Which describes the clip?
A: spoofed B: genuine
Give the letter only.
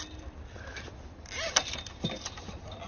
B